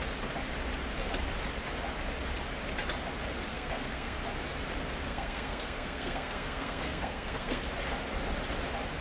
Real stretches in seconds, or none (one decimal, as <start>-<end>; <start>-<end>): 0.0-3.5; 4.2-5.1; 7.6-9.0